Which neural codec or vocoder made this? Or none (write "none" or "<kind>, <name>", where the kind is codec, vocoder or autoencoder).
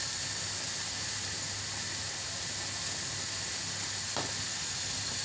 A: none